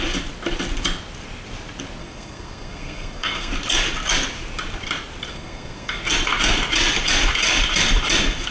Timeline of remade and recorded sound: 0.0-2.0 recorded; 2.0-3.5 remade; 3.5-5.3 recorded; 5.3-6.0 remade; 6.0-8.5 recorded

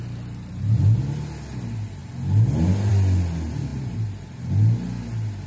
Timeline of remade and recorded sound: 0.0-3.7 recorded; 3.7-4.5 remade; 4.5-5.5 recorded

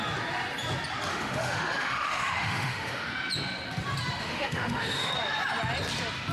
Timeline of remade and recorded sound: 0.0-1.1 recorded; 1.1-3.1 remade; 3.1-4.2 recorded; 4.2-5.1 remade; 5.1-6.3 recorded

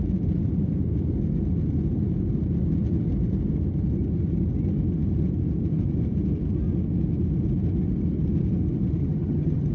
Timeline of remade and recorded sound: 0.0-9.0 recorded; 9.0-9.7 remade

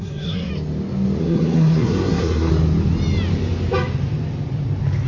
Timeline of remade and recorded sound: 0.0-0.5 remade; 0.5-1.2 recorded; 1.2-2.5 remade; 2.5-5.1 recorded

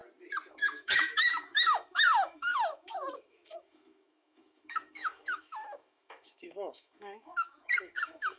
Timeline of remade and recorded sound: 0.0-0.5 recorded; 0.5-8.4 remade